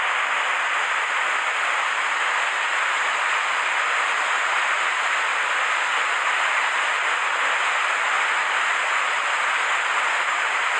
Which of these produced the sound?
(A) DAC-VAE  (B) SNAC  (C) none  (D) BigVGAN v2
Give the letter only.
C